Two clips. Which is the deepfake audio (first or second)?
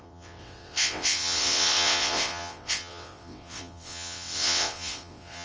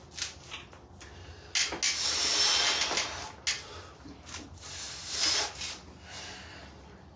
first